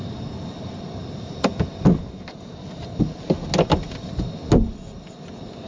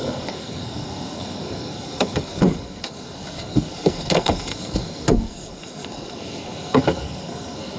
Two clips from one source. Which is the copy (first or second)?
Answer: second